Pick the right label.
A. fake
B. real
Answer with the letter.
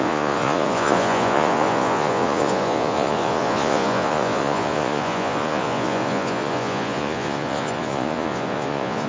A